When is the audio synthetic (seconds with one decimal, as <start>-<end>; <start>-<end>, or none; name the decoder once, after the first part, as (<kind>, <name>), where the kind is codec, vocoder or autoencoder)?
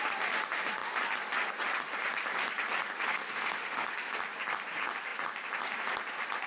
3.1-4.1 (autoencoder, DAC-VAE)